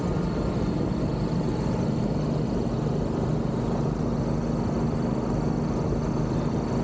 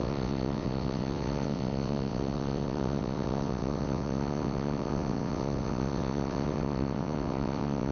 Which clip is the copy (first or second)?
second